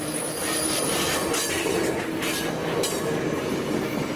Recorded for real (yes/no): yes